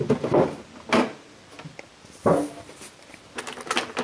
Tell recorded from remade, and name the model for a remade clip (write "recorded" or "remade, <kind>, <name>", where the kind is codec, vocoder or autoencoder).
recorded